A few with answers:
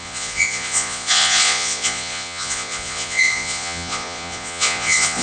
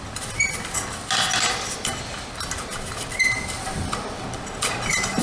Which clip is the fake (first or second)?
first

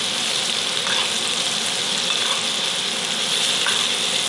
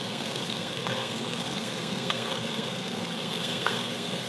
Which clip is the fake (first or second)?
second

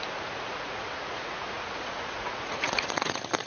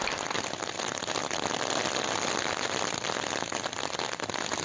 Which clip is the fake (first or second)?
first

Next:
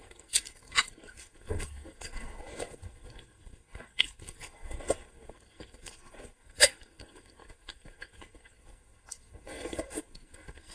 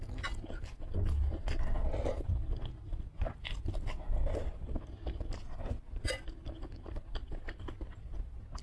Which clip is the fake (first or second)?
first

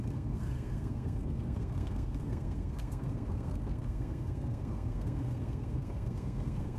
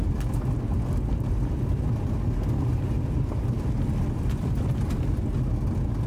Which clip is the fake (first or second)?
first